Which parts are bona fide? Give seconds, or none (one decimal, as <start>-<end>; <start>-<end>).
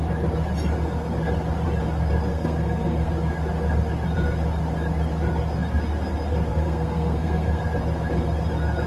0.0-2.3; 3.1-6.5; 7.6-8.9